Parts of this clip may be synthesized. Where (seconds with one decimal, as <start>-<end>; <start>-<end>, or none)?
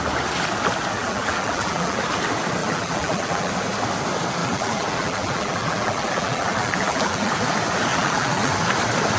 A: 1.0-2.0; 2.6-3.5; 4.4-7.3; 7.9-8.5